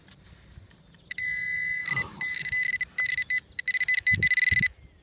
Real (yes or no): yes